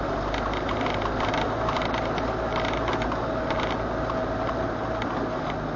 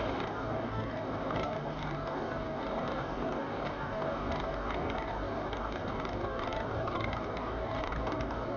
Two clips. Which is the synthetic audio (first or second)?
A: second